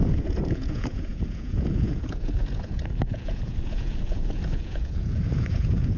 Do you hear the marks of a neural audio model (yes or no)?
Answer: yes